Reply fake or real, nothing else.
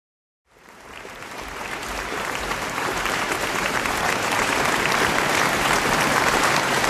fake